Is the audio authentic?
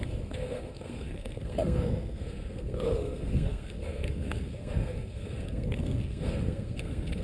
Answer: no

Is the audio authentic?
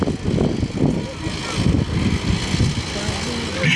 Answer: yes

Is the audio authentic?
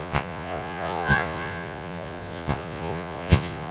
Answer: no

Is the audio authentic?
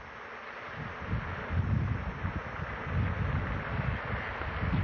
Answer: yes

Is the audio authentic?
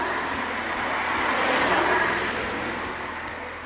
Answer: yes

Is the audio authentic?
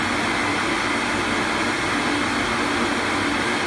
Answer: yes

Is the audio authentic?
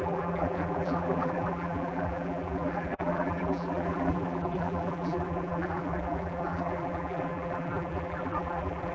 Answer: no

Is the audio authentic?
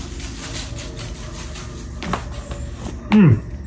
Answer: yes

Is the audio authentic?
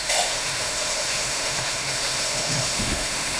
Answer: no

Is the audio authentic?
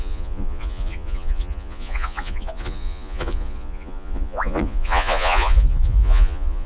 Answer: no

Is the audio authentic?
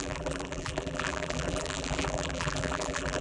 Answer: no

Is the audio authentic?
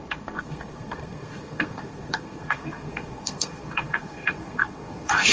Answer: no